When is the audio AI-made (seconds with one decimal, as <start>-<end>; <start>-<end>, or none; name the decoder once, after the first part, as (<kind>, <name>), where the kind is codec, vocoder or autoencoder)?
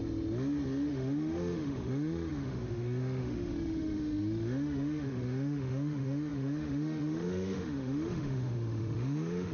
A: 0.9-9.5 (autoencoder, DAC-VAE)